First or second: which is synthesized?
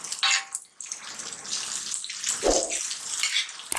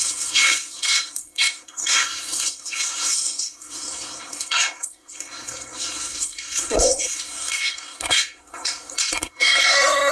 second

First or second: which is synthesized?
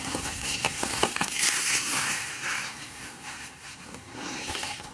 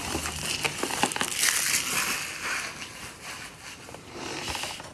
first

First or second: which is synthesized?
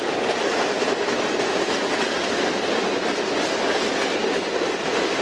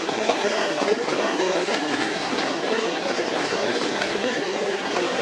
second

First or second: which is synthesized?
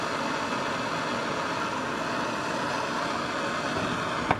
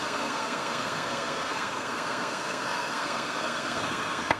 second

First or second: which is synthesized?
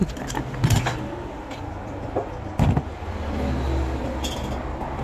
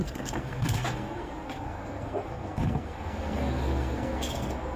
second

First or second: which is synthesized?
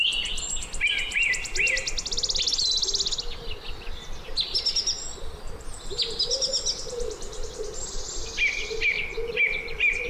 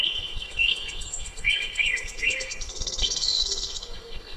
second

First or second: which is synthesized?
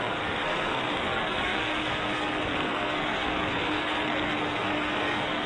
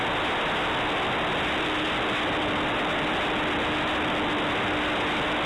first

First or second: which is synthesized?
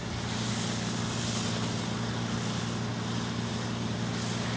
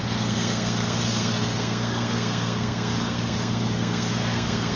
second